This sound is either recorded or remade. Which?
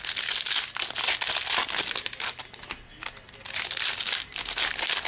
recorded